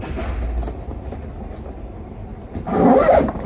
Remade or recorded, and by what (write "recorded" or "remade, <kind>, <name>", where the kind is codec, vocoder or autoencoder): recorded